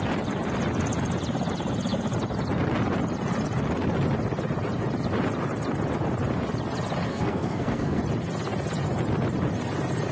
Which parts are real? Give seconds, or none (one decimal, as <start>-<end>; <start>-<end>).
0.0-7.1; 8.0-10.1